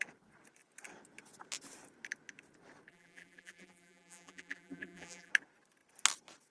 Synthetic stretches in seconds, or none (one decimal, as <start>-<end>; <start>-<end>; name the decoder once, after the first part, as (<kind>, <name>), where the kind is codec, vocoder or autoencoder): 2.9-5.3 (vocoder, BigVGAN v2)